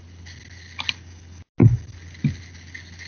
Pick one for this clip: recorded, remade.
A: recorded